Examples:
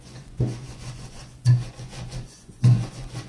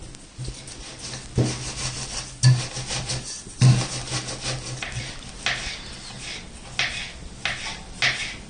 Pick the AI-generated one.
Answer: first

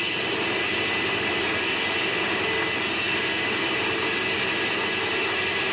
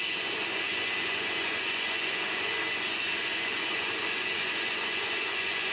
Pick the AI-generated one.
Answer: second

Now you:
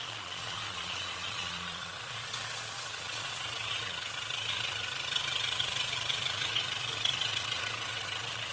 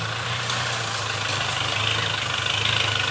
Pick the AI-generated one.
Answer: first